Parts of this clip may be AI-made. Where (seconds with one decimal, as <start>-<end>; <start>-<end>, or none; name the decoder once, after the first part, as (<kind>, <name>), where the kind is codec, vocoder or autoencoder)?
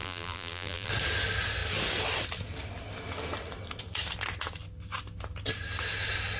0.0-0.9 (vocoder, BigVGAN v2)